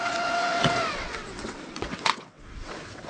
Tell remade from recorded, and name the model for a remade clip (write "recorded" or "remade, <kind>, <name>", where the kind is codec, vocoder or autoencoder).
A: remade, vocoder, WaveNeXt